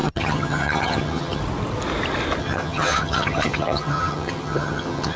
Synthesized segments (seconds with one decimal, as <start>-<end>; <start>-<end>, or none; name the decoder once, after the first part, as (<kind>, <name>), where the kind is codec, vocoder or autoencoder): 0.0-1.4 (vocoder, HiFi-GAN); 2.4-5.2